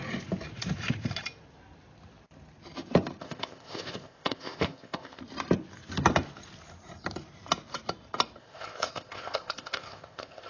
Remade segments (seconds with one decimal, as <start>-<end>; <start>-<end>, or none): 3.2-5.2; 8.4-10.5